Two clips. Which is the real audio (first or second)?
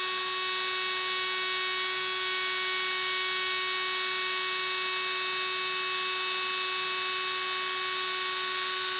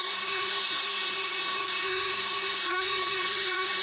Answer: first